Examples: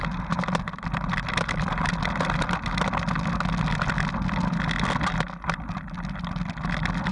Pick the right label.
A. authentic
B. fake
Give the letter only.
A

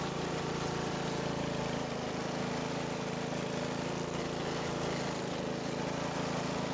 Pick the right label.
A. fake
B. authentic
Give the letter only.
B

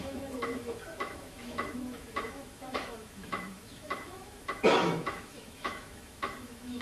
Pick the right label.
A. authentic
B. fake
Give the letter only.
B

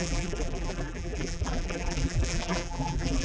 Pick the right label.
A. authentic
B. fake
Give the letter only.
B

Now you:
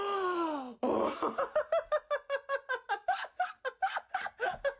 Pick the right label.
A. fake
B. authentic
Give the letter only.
B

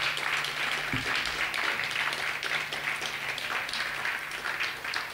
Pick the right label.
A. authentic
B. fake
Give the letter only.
A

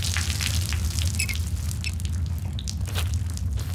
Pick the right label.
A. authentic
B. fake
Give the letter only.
A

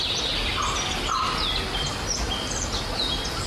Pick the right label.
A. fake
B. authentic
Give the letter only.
B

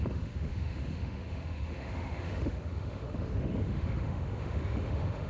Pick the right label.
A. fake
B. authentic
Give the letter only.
A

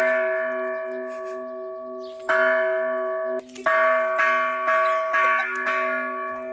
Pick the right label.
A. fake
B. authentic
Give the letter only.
B